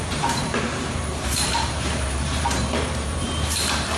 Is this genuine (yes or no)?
no